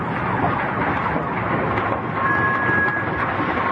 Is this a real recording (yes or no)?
yes